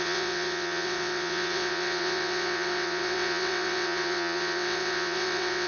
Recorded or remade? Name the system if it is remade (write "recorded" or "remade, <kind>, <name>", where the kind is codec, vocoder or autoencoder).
remade, vocoder, WaveNeXt